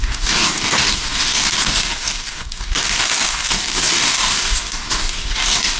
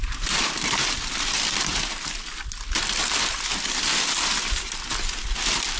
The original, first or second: second